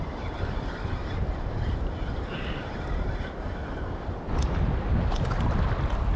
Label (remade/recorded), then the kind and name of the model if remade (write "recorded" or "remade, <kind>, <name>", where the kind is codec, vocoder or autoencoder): recorded